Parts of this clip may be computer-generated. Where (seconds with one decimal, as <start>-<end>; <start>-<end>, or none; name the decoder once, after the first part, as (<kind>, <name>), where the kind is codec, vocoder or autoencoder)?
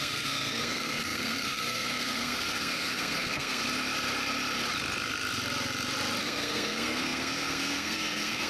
0.0-3.6 (codec, SNAC); 6.2-8.5